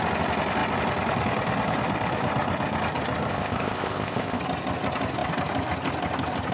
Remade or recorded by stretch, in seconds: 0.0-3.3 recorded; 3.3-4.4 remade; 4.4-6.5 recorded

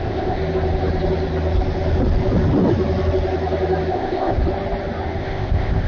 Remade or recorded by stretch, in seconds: 0.0-0.4 remade; 0.4-3.9 recorded; 3.9-4.4 remade; 4.4-5.2 recorded; 5.2-5.9 remade

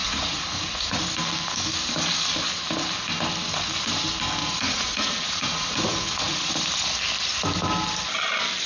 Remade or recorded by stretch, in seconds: 0.0-1.0 remade; 1.0-4.4 recorded; 4.4-6.5 remade; 6.5-8.7 recorded

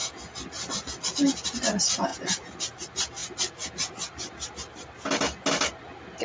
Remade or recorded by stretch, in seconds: 0.0-6.2 recorded

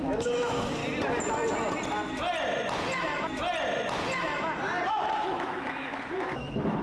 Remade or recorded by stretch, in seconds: 0.0-0.8 remade; 0.8-4.9 recorded; 4.9-6.8 remade

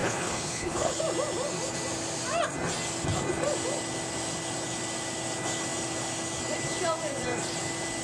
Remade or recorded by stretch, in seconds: 0.0-1.0 remade; 1.0-8.0 recorded